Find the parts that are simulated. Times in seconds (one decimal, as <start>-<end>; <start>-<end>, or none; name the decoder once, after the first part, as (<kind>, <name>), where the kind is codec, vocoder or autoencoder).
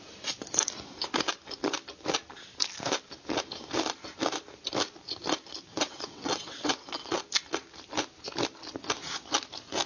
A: 5.7-7.2 (vocoder, WaveNeXt)